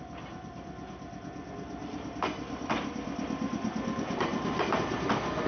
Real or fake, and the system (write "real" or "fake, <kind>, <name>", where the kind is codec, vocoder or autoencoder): real